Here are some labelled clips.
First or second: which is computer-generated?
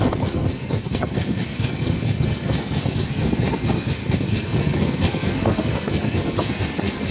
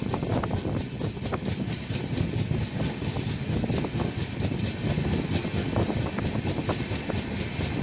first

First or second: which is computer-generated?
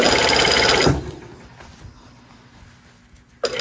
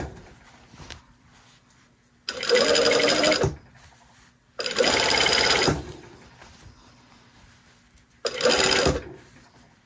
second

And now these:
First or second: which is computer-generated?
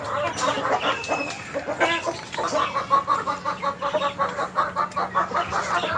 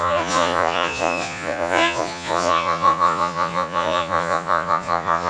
second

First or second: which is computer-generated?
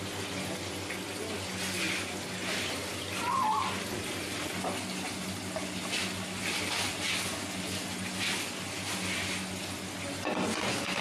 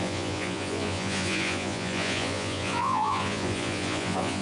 second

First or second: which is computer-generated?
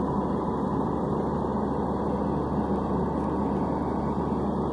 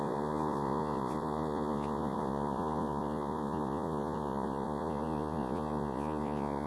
second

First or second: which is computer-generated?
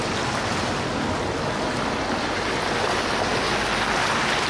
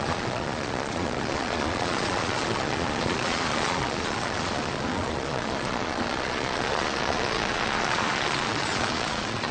second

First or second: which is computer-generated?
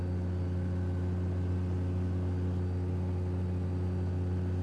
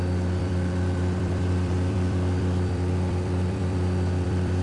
second